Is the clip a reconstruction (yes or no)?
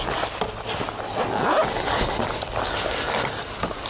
no